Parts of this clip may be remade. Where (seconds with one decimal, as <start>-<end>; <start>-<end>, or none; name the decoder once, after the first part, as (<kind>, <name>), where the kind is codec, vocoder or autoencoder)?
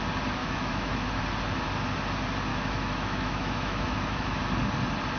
0.4-1.2 (autoencoder, DAC-VAE); 2.5-4.4